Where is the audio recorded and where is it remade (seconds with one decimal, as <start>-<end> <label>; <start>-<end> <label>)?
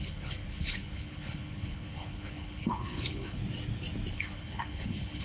0.0-3.4 remade; 3.4-4.1 recorded; 4.1-5.2 remade